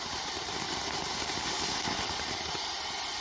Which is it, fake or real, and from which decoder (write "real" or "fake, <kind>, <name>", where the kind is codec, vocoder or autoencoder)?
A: real